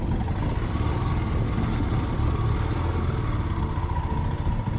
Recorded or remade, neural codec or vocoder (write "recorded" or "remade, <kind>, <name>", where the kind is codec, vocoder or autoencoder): recorded